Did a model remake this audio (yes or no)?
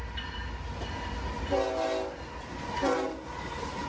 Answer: no